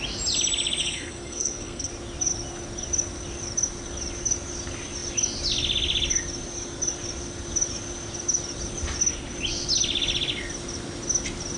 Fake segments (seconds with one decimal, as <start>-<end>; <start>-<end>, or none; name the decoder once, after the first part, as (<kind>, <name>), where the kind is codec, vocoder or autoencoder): 0.8-1.9 (codec, SNAC)